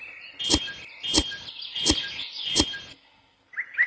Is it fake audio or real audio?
real